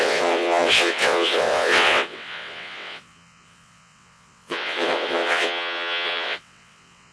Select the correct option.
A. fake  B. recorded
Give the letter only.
A